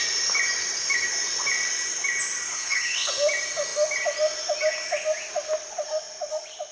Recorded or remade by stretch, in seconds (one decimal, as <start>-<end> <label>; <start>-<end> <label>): 0.0-2.5 recorded; 2.5-3.1 remade; 3.1-6.7 recorded